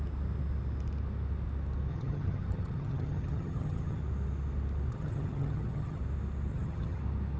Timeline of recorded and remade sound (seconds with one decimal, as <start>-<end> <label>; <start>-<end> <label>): 0.0-1.9 recorded; 1.9-4.0 remade; 4.0-4.9 recorded; 4.9-6.0 remade; 6.0-6.5 recorded; 6.5-7.0 remade; 7.0-7.4 recorded